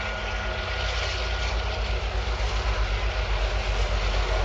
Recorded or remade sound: recorded